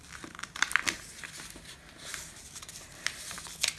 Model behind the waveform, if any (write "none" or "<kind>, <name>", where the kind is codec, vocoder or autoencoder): none